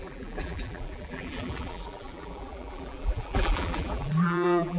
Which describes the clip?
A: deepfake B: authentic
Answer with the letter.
A